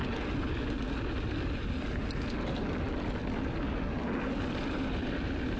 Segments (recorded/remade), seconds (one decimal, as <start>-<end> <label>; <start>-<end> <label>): 0.0-5.6 recorded